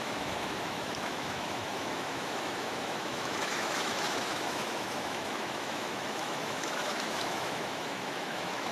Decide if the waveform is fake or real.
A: fake